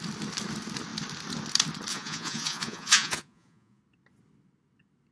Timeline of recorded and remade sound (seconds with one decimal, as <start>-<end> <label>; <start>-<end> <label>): 0.0-1.9 recorded; 1.9-3.8 remade; 3.8-5.1 recorded